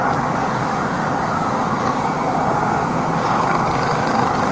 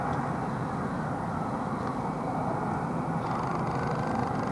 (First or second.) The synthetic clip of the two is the first